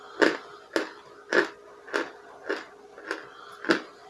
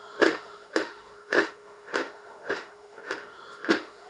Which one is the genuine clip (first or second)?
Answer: first